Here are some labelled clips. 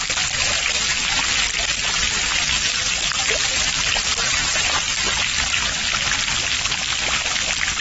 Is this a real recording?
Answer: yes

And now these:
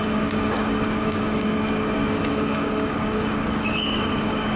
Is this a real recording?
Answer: no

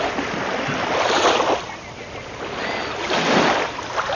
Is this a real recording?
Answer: yes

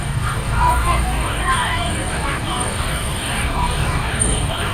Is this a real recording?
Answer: no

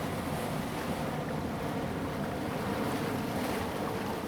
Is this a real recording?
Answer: yes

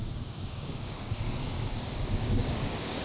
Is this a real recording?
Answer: no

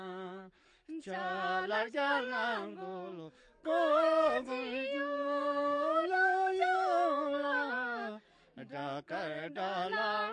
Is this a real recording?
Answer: no